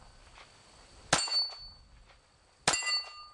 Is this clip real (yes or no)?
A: yes